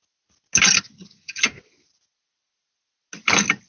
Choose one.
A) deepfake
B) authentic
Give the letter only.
B